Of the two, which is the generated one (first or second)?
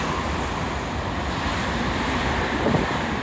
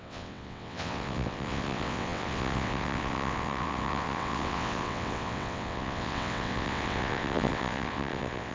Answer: second